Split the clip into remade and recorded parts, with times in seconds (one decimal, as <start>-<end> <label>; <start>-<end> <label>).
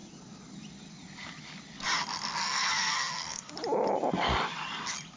0.0-2.4 recorded; 2.4-3.5 remade; 3.5-5.2 recorded